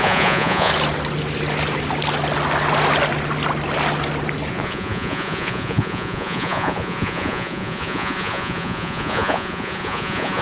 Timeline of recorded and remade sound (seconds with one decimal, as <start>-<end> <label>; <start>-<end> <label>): 0.0-0.7 remade; 0.7-4.5 recorded; 4.5-10.4 remade